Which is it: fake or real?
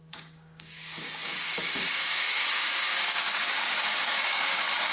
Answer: fake